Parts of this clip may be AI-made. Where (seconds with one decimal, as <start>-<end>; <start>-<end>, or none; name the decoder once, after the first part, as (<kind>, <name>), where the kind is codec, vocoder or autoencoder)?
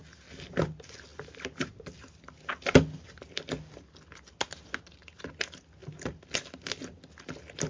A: none